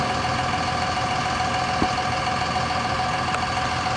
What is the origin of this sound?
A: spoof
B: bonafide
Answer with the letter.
B